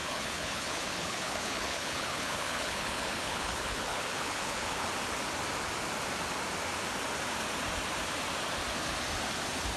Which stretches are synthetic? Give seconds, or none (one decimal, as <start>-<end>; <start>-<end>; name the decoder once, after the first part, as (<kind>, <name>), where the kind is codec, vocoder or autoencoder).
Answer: 0.0-4.9 (codec, HILCodec)